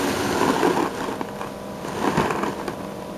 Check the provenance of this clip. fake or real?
real